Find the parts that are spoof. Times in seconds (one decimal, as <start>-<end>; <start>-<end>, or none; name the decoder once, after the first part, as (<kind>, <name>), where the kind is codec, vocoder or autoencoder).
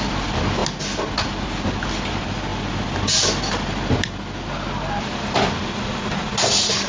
none